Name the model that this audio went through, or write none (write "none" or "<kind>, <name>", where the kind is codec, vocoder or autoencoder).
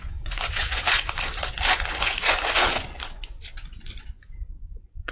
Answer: vocoder, Vocos